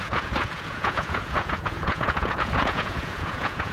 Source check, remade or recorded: remade